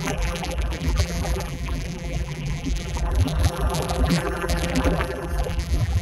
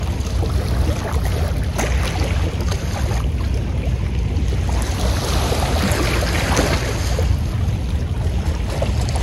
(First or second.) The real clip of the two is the second